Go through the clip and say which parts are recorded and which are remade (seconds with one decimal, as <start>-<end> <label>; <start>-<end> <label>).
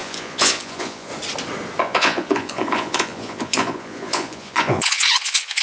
0.0-1.1 remade; 1.1-1.8 recorded; 1.8-5.6 remade